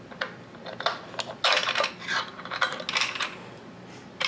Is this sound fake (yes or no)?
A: no